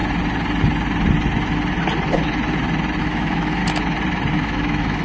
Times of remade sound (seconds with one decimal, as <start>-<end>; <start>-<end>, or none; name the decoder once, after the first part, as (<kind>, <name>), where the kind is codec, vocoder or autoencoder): 3.0-3.6 (autoencoder, DAC-VAE); 4.3-5.0